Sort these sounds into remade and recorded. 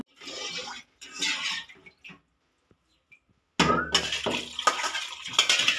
recorded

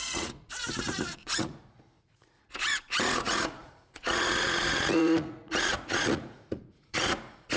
remade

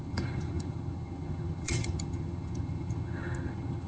remade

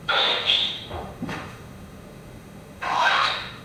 remade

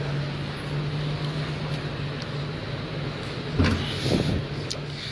recorded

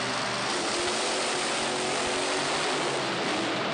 recorded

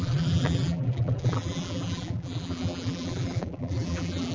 remade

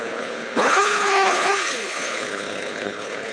remade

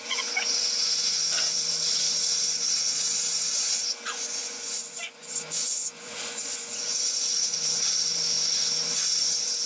remade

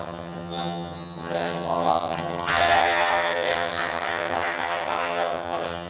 remade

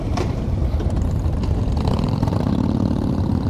remade